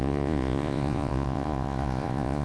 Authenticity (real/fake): fake